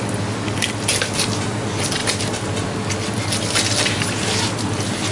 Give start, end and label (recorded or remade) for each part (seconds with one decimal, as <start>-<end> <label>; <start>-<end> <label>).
0.0-5.1 recorded